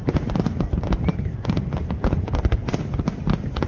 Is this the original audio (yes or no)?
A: yes